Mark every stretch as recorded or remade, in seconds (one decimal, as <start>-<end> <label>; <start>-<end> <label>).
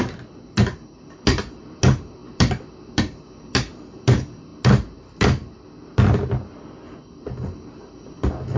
0.0-8.6 recorded